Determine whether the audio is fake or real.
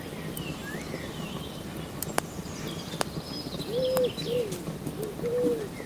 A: real